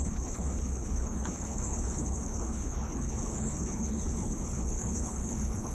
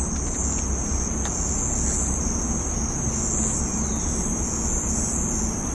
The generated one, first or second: first